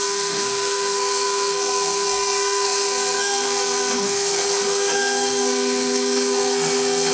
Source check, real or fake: fake